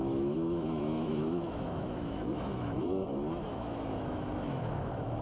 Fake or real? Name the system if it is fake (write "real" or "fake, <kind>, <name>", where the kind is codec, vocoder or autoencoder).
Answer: fake, autoencoder, DAC-VAE